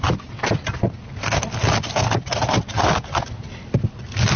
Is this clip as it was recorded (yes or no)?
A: yes